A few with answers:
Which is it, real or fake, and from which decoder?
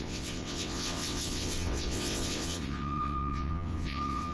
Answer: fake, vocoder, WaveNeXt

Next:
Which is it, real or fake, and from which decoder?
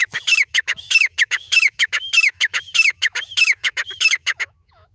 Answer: fake, autoencoder, DAC-VAE